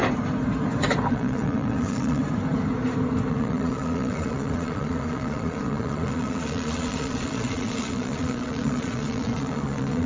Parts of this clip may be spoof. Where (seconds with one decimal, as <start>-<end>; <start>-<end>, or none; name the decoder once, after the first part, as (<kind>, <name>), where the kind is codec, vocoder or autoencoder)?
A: 1.1-2.2 (vocoder, Vocos); 3.3-10.1